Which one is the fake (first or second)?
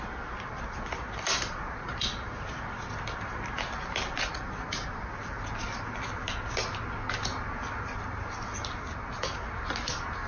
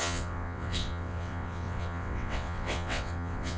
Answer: second